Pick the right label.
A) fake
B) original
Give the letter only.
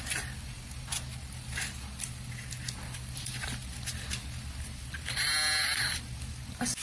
B